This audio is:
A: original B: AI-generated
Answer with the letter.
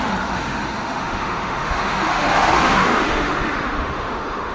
B